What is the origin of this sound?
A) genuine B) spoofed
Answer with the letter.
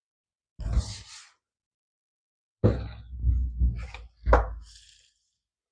A